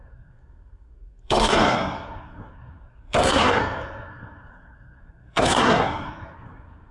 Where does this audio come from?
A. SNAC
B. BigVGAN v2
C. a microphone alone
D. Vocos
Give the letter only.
A